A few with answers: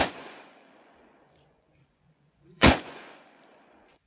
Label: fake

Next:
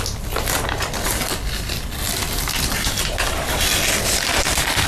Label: real